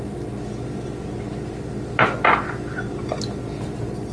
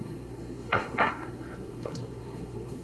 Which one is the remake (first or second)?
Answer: second